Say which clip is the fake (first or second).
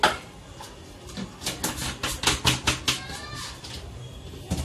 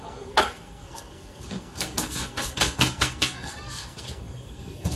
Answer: second